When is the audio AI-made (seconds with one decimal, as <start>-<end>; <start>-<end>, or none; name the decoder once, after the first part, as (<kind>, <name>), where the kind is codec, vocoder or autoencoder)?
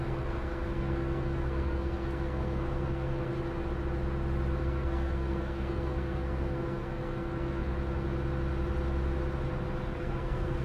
0.0-3.3 (codec, SNAC); 4.6-7.7; 10.0-10.6